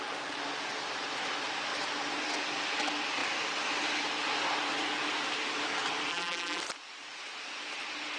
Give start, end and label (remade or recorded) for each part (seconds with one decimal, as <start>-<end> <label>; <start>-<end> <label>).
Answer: 0.0-6.1 recorded; 6.1-6.6 remade; 6.6-8.2 recorded

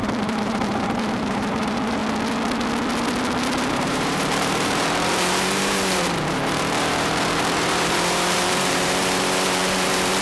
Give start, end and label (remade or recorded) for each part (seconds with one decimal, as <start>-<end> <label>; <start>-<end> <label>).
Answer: 0.0-2.0 remade; 2.0-3.7 recorded; 3.7-10.2 remade

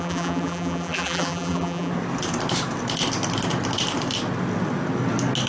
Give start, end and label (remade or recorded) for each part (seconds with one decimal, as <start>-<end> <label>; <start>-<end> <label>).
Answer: 0.0-1.9 remade; 1.9-5.5 recorded

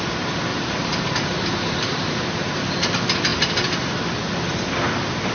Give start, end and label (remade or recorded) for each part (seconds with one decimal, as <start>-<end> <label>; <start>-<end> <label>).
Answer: 0.0-0.5 recorded; 0.5-2.9 remade; 2.9-3.3 recorded; 3.3-4.1 remade; 4.1-5.3 recorded

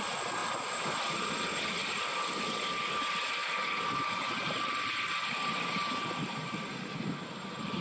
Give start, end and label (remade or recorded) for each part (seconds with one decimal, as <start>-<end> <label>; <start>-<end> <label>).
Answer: 0.0-0.4 recorded; 0.4-1.1 remade; 1.1-1.8 recorded; 1.8-3.0 remade; 3.0-3.4 recorded; 3.4-6.2 remade; 6.2-7.8 recorded

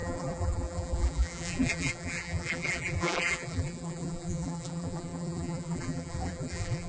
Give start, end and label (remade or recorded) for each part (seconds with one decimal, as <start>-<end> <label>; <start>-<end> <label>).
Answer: 0.0-6.9 remade

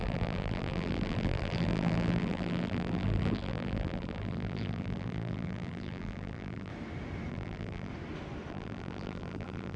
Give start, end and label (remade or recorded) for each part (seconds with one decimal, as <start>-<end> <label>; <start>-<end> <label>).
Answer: 0.0-6.7 remade; 6.7-7.3 recorded; 7.3-7.9 remade; 7.9-8.5 recorded; 8.5-9.8 remade